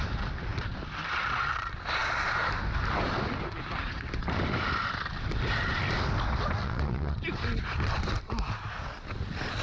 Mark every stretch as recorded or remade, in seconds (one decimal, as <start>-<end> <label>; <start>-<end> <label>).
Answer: 0.0-6.6 recorded; 6.6-7.2 remade; 7.2-9.6 recorded